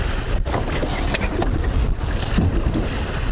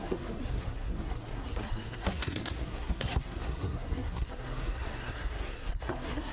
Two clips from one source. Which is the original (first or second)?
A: first